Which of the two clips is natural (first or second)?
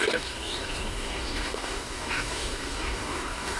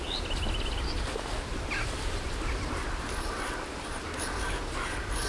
second